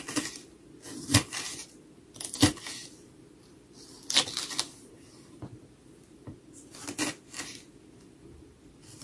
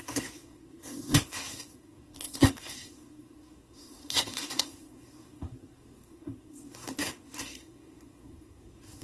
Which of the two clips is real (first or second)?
first